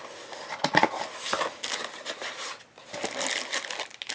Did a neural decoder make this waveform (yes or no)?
no